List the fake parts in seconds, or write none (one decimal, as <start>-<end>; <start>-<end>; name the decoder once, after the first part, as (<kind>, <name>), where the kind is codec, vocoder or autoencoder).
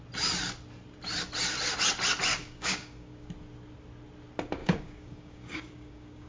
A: 2.3-3.3 (codec, DAC); 4.6-6.3